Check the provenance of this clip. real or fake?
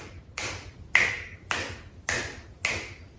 real